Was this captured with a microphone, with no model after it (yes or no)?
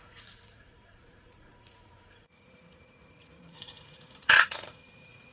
no